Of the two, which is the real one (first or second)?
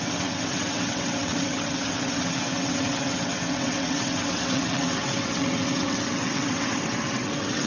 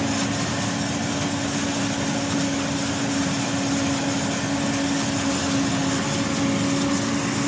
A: second